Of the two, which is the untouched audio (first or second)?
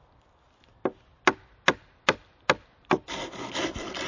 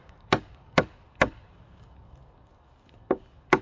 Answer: first